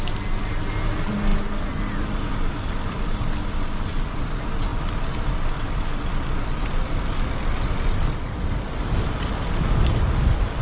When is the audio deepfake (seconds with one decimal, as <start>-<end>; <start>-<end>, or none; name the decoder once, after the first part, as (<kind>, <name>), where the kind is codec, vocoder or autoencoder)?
none